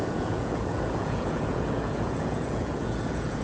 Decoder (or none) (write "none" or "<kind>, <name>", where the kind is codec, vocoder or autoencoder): vocoder, Vocos